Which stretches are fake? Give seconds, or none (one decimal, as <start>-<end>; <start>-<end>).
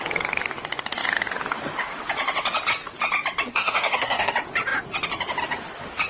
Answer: 3.5-4.3